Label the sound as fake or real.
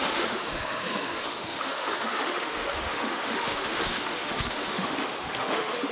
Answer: fake